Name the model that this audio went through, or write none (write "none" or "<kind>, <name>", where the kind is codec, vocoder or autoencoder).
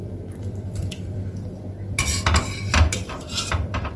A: vocoder, BigVGAN v2